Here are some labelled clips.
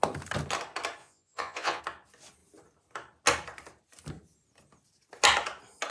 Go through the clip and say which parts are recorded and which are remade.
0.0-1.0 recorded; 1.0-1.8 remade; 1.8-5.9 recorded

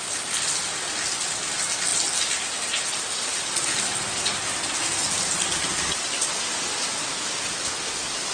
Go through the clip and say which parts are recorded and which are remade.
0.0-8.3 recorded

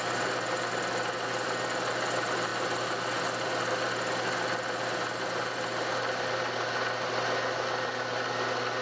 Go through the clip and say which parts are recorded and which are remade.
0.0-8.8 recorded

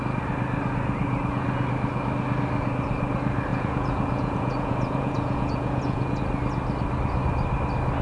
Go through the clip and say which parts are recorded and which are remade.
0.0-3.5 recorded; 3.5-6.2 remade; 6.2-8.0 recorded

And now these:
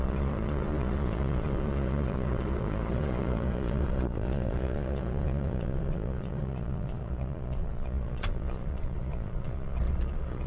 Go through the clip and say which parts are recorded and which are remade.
0.0-10.5 remade

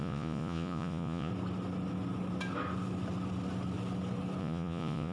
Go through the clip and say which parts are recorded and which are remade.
0.0-1.3 remade; 1.3-4.4 recorded; 4.4-5.1 remade

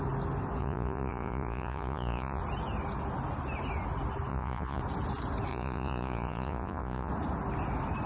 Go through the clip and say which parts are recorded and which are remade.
0.0-0.6 recorded; 0.6-2.4 remade; 2.4-4.3 recorded; 4.3-4.8 remade; 4.8-5.5 recorded; 5.5-7.1 remade; 7.1-8.1 recorded

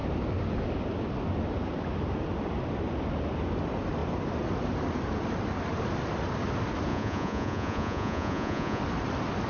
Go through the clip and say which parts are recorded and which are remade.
0.0-6.9 recorded; 6.9-8.8 remade; 8.8-9.5 recorded